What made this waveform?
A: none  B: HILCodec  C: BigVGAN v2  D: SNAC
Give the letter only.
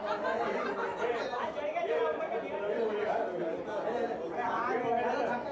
A